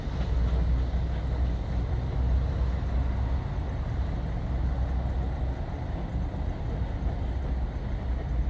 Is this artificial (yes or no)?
no